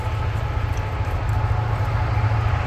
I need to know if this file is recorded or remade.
recorded